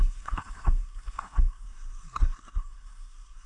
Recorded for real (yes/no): no